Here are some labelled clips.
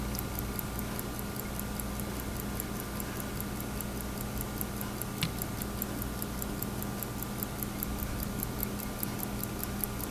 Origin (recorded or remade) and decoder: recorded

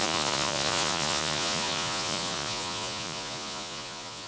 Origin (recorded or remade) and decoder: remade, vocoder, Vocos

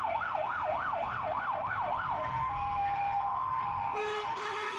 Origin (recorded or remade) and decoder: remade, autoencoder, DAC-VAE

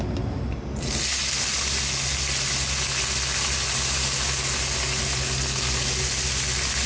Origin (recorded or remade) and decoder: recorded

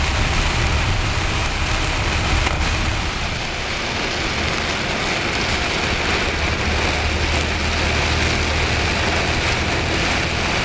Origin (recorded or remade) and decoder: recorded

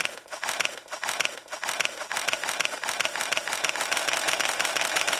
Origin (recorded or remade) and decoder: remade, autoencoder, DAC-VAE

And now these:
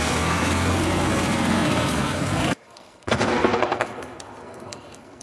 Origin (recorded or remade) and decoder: remade, codec, SNAC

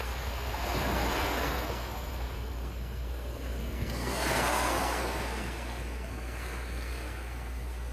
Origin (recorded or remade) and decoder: remade, codec, SNAC